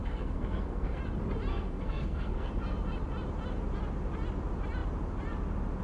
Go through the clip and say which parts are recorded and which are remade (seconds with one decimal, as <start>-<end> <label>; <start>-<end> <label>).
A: 0.0-1.0 remade; 1.0-1.5 recorded; 1.5-2.5 remade; 2.5-5.8 recorded